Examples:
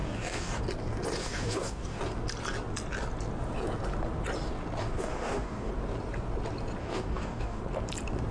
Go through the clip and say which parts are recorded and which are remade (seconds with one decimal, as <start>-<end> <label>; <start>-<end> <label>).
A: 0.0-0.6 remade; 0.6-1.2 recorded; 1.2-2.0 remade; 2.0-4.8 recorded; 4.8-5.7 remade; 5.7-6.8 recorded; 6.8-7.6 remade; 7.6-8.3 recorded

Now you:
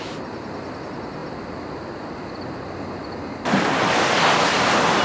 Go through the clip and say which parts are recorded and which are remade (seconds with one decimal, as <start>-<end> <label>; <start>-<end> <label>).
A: 0.0-5.0 recorded

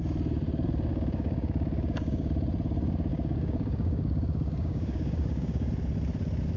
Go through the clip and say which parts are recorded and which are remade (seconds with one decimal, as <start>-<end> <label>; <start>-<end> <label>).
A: 0.0-0.9 recorded; 0.9-2.3 remade; 2.3-3.1 recorded; 3.1-5.7 remade; 5.7-6.6 recorded

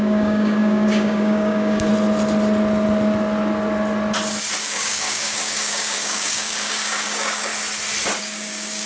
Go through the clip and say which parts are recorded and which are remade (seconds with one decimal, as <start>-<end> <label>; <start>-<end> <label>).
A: 0.0-1.9 remade; 1.9-4.6 recorded; 4.6-7.5 remade; 7.5-8.2 recorded; 8.2-8.9 remade

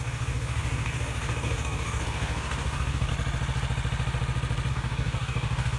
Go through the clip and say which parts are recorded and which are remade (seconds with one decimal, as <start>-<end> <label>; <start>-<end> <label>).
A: 0.0-3.1 remade; 3.1-4.7 recorded; 4.7-5.8 remade